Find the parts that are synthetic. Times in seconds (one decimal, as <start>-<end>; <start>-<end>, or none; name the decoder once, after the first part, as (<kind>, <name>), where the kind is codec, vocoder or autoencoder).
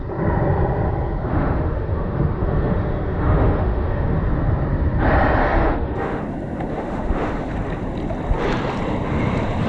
1.3-4.2 (autoencoder, DAC-VAE); 5.4-6.2; 6.7-7.5